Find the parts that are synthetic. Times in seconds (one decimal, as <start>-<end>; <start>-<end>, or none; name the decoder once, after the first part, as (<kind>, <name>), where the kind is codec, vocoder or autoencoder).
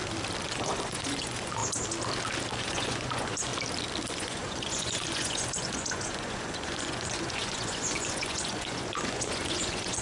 0.5-1.6 (vocoder, Vocos); 2.6-3.5; 4.1-10.0